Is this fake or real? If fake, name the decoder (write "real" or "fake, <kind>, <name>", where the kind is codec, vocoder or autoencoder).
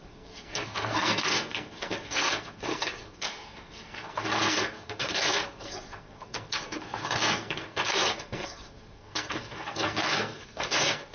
fake, codec, SNAC